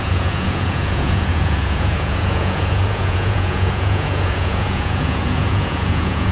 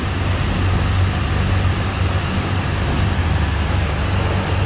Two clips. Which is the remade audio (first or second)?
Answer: first